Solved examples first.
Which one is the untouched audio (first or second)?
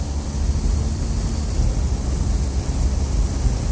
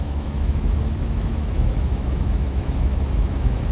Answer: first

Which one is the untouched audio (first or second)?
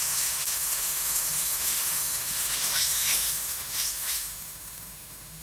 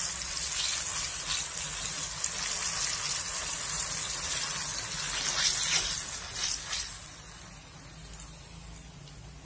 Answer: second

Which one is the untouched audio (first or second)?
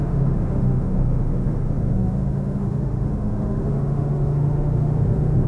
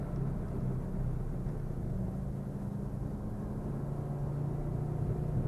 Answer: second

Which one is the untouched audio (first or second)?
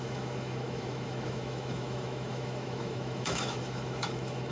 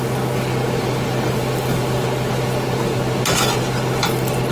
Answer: second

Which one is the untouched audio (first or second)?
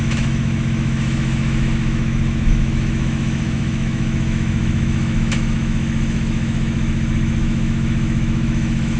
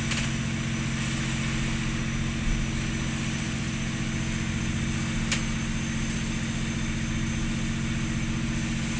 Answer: second